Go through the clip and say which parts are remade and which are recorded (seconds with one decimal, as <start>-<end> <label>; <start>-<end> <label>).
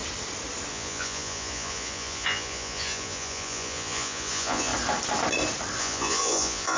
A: 0.0-0.7 recorded; 0.7-4.7 remade; 4.7-5.8 recorded; 5.8-6.8 remade